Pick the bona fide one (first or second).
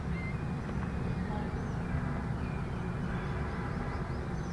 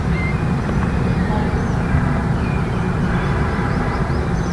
first